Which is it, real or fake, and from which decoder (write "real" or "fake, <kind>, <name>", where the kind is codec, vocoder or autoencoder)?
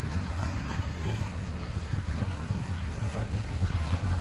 fake, codec, SNAC